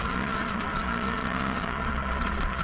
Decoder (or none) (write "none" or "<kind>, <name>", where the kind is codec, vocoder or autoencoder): vocoder, Vocos